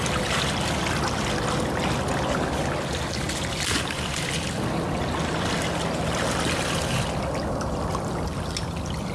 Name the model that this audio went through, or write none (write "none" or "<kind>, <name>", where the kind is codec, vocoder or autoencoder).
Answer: none